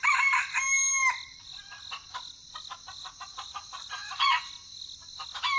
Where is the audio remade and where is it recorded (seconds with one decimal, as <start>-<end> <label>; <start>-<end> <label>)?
0.0-3.0 recorded; 3.0-4.5 remade; 4.5-5.6 recorded